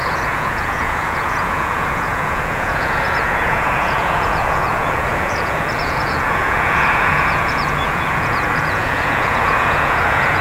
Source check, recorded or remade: remade